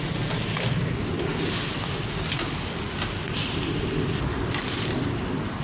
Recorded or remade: recorded